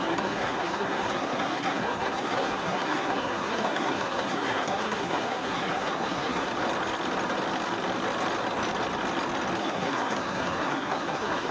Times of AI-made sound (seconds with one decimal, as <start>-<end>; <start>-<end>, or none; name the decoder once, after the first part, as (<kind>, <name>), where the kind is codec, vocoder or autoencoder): 0.0-6.5 (codec, SNAC); 9.6-11.5

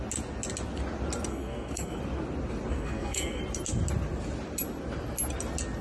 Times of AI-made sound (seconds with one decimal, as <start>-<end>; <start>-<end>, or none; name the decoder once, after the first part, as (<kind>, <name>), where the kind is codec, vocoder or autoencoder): 1.3-2.0 (codec, SNAC); 2.7-3.4

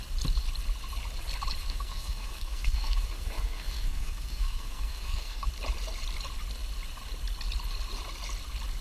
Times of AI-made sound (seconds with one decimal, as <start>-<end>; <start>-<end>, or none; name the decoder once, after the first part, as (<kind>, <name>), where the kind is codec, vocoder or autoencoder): 1.6-5.5 (codec, SNAC)

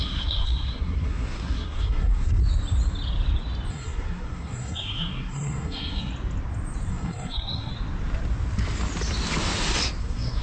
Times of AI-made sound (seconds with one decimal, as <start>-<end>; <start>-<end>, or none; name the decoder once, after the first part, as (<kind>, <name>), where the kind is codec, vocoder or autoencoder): 0.0-2.4 (codec, SNAC); 3.7-6.1; 6.9-7.7; 10.0-10.4

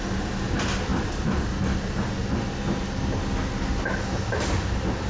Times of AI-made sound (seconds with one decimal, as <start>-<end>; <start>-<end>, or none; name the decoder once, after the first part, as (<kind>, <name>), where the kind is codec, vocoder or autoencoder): none

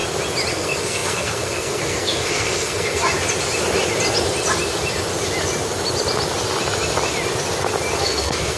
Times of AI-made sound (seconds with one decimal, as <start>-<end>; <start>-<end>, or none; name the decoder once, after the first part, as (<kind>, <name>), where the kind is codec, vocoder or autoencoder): 0.5-3.0 (codec, SNAC); 8.0-8.6

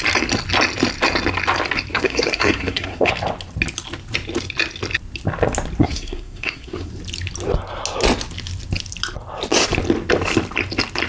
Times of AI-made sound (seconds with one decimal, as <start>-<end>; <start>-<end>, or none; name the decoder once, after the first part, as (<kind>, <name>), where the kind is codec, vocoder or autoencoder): 1.9-3.1 (codec, SNAC); 5.8-6.9

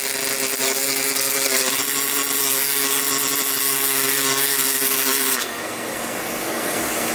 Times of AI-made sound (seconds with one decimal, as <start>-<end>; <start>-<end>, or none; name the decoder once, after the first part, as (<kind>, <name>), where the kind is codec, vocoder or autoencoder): 0.6-1.8 (codec, SNAC); 2.4-3.0; 3.6-7.1